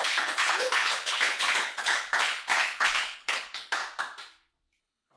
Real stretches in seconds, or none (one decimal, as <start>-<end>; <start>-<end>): 3.8-4.8

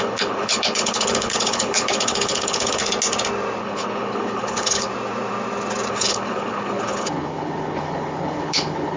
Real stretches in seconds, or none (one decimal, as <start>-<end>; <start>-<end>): 2.8-3.6; 4.9-5.9

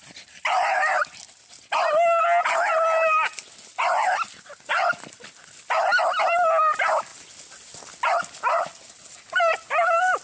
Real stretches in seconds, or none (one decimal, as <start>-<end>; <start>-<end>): 0.0-10.2

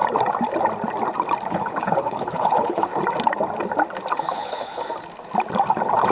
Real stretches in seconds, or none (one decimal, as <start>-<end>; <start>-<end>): 0.0-1.5; 2.9-4.3; 4.8-6.1

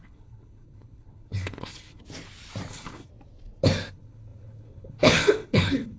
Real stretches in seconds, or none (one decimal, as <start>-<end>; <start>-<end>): 2.0-2.7; 3.1-3.9

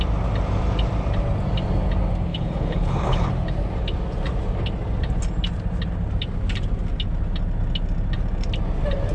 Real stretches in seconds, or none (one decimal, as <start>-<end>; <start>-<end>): 0.0-2.3; 3.3-9.1

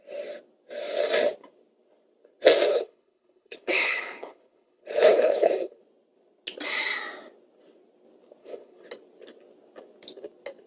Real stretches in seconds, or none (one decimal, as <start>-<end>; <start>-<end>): 0.0-2.7; 5.8-8.4; 8.9-10.7

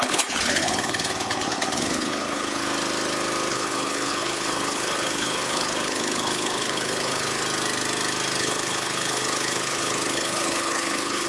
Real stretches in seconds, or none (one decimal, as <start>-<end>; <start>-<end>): 2.6-3.5; 7.4-8.4